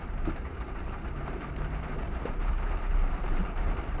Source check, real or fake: fake